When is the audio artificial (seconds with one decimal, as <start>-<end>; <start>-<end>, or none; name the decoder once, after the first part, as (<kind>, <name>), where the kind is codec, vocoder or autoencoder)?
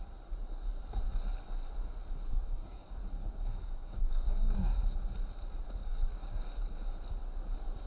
2.3-4.8 (codec, DAC); 5.8-6.9